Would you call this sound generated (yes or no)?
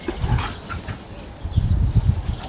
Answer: no